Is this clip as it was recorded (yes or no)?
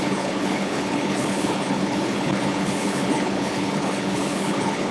no